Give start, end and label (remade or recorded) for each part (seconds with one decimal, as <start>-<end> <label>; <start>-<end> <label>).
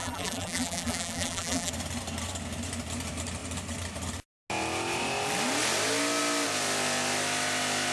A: 0.0-1.7 remade; 1.7-7.9 recorded